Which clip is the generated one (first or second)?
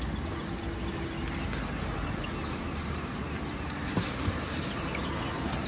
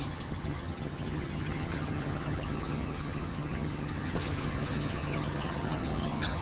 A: second